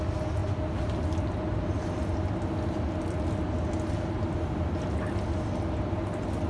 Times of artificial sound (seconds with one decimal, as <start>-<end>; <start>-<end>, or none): none